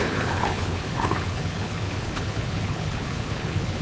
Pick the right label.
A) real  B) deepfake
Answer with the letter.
B